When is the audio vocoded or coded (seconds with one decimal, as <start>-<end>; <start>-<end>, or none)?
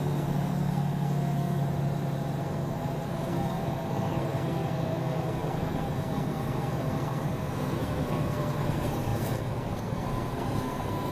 0.0-1.6; 2.4-11.1